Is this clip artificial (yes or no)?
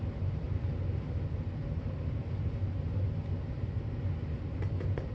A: no